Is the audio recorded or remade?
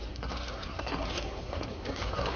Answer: remade